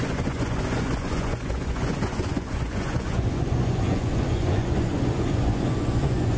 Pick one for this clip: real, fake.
fake